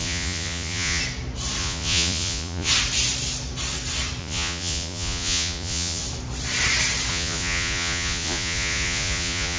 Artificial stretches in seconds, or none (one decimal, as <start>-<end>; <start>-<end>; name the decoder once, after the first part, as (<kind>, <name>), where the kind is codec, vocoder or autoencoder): 0.0-1.0 (vocoder, Vocos); 1.6-2.7; 4.2-6.0; 7.1-9.6